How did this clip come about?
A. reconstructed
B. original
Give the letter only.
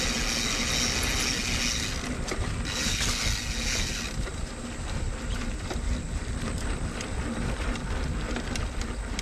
B